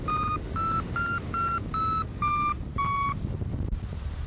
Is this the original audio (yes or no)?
yes